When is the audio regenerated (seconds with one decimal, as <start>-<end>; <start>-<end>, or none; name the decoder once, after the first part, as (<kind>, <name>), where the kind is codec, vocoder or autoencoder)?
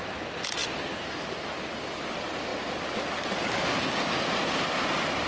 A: none